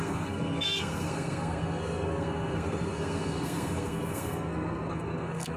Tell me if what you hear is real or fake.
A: fake